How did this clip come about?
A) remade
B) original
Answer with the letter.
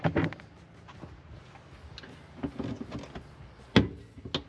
B